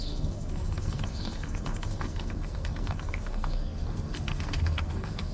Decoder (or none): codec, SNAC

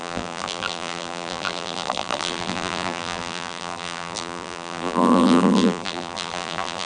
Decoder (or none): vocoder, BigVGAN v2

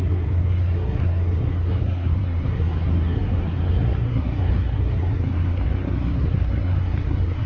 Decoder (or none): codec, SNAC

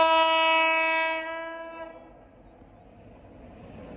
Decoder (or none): none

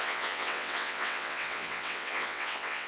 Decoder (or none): vocoder, WaveNeXt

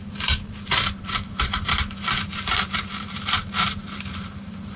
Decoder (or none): vocoder, BigVGAN v2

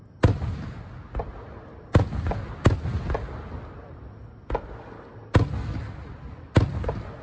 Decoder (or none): none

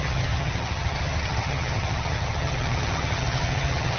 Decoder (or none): vocoder, HiFi-GAN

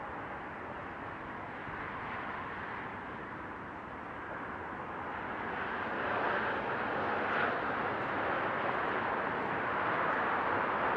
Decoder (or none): none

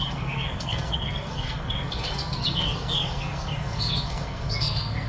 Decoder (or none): codec, SNAC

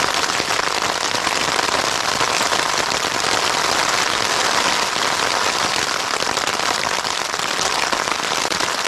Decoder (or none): none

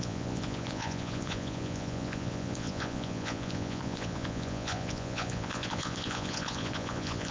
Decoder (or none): vocoder, Vocos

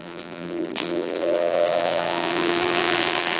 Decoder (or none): vocoder, BigVGAN v2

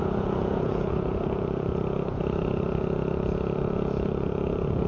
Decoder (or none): vocoder, Vocos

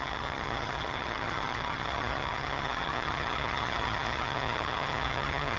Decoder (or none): vocoder, HiFi-GAN